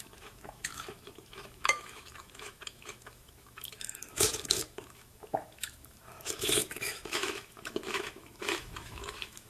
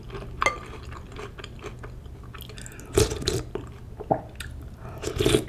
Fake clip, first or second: first